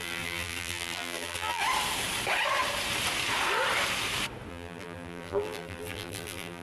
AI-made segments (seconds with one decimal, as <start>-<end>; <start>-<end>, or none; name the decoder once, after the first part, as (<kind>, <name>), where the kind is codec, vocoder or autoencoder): 0.0-1.6 (vocoder, BigVGAN v2); 4.5-6.6